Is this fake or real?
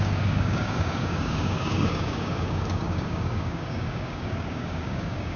fake